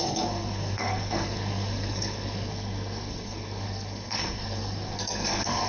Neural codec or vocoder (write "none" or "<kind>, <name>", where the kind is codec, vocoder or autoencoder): codec, SNAC